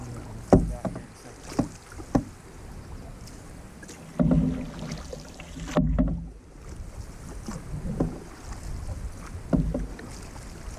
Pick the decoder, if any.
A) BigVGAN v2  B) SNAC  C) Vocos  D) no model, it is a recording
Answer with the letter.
D